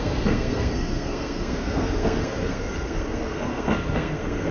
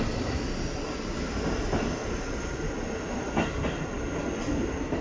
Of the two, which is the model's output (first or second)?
first